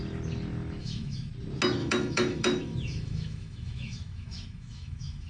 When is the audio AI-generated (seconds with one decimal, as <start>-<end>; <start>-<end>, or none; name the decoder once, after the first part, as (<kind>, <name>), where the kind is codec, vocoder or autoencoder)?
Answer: 0.8-1.3 (autoencoder, DAC-VAE); 1.8-5.3